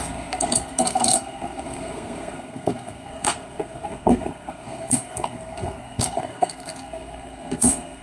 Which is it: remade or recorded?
remade